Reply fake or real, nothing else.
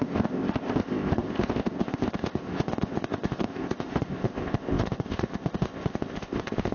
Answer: fake